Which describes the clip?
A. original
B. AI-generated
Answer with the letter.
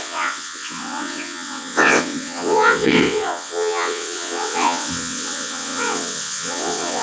B